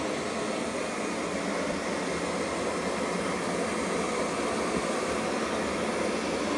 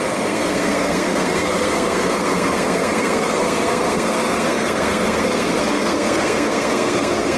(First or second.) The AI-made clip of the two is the second